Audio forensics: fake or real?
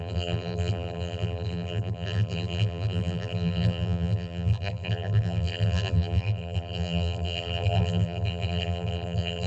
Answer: fake